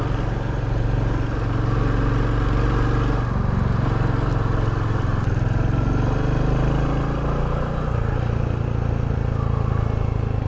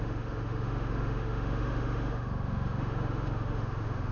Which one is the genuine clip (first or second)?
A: first